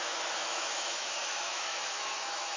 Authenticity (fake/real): fake